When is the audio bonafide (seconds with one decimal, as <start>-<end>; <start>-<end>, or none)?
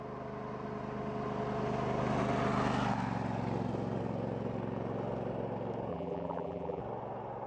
0.0-5.9; 6.8-7.5